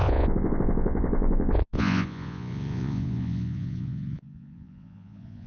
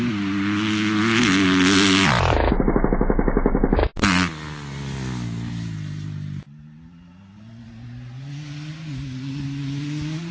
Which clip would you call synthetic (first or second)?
first